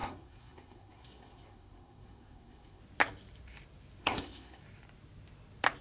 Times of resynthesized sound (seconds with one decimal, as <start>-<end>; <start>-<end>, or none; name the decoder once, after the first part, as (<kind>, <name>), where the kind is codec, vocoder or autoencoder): 0.0-2.8 (codec, SNAC); 4.0-4.6